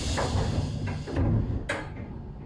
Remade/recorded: recorded